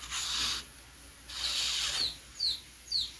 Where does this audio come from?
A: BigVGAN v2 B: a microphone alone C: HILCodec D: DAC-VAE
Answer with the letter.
B